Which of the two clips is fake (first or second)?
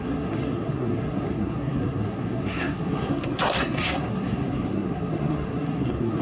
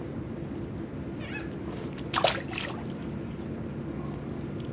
first